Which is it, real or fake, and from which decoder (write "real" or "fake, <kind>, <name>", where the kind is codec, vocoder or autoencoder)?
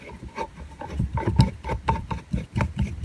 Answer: fake, vocoder, BigVGAN v2